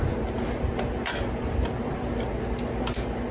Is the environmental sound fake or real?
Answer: real